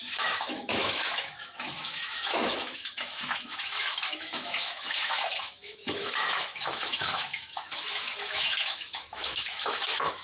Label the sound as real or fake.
fake